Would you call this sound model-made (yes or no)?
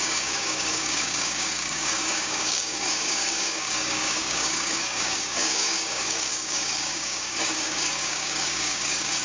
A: yes